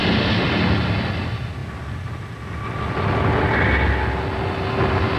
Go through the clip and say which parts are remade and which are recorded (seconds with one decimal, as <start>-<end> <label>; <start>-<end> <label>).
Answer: 0.0-5.2 recorded